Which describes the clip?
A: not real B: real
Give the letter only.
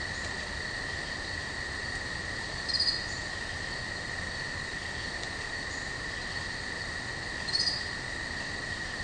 B